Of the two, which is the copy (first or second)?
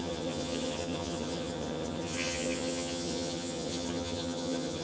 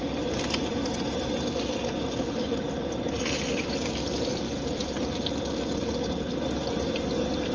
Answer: first